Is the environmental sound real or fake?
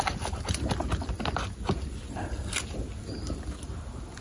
real